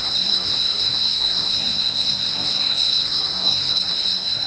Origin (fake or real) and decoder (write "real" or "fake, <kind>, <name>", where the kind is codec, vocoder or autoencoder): fake, codec, SNAC